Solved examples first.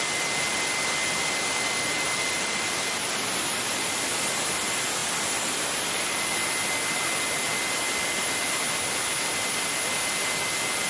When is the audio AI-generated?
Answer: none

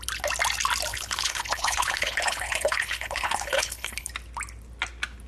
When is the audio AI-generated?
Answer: 0.9-4.1

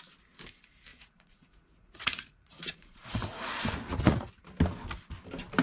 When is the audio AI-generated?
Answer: 0.9-4.3

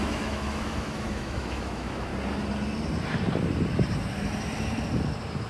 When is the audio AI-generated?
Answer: 0.0-2.1

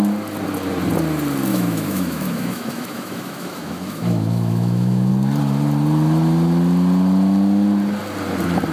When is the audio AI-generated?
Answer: 1.5-5.1